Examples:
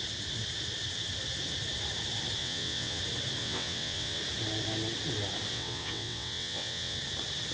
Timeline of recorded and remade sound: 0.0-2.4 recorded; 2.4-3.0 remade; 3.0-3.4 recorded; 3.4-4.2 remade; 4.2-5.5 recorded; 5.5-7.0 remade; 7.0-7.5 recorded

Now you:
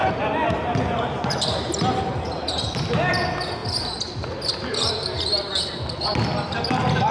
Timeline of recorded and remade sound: 0.0-7.1 recorded

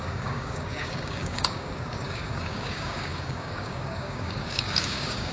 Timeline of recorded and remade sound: 0.0-5.3 remade

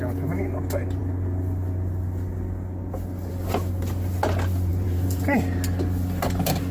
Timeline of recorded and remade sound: 0.0-4.7 recorded; 4.7-5.4 remade; 5.4-6.7 recorded

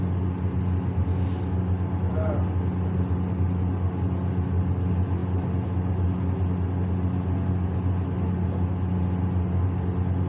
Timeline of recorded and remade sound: 0.0-10.3 recorded

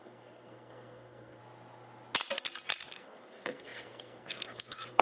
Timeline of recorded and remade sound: 0.0-1.4 remade; 1.4-2.9 recorded; 2.9-5.0 remade

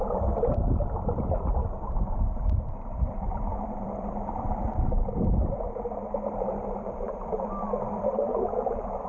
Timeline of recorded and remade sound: 0.0-9.1 remade